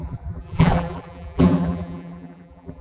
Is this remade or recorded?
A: remade